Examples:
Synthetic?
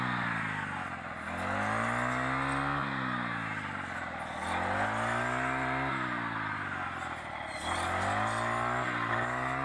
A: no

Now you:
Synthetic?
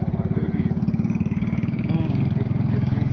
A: yes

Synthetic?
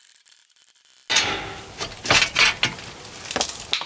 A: no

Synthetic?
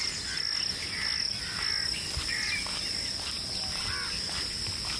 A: no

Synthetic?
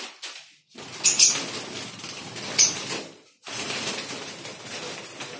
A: no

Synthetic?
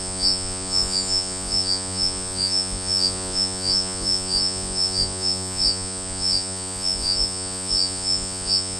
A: yes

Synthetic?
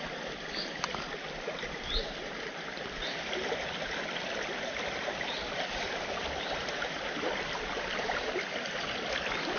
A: yes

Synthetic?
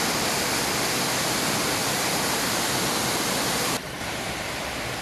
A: no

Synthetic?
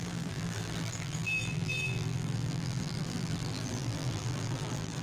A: yes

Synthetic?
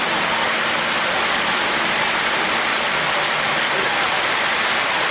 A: no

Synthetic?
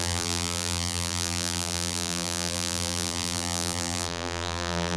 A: yes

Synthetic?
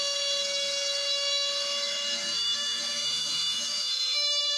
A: yes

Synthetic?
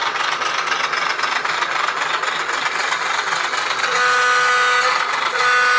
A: no